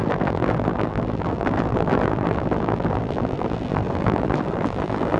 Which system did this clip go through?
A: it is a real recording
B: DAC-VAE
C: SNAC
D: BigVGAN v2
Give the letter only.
D